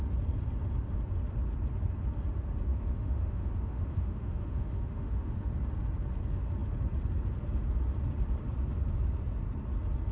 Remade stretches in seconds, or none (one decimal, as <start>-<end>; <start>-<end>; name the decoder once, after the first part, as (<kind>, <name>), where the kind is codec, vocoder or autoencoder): 2.7-5.5 (autoencoder, DAC-VAE)